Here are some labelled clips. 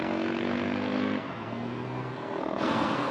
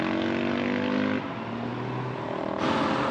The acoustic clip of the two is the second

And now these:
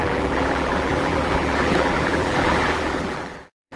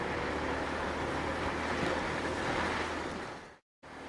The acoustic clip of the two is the second